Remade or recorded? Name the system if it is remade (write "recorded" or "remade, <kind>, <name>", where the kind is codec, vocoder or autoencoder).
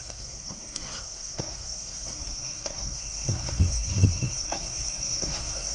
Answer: remade, codec, SNAC